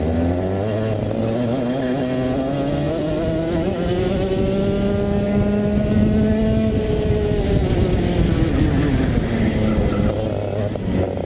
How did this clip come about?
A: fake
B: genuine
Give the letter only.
B